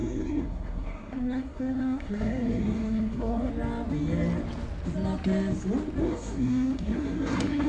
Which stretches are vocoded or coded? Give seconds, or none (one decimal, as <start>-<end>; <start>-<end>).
0.0-3.5; 6.0-7.7

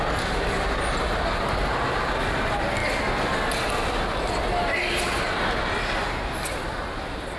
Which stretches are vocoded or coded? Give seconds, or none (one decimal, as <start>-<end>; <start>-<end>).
none

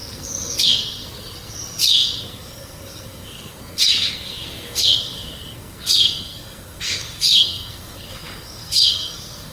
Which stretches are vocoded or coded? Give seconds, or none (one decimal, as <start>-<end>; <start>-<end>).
0.0-9.5